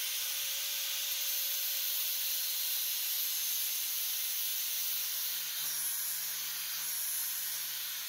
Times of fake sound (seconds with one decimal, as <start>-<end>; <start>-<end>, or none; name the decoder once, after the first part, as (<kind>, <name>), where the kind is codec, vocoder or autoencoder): none